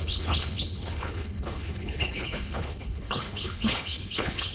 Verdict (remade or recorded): remade